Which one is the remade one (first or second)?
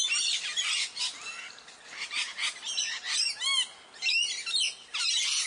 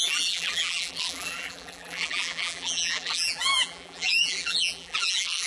second